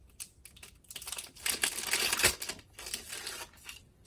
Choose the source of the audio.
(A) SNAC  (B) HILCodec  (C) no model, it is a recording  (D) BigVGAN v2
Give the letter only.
C